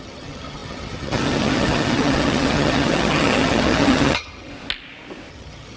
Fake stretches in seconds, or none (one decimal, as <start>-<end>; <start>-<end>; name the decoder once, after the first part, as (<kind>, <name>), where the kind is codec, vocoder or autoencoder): 0.0-4.5 (vocoder, HiFi-GAN); 5.3-5.8